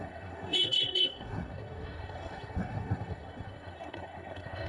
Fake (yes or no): yes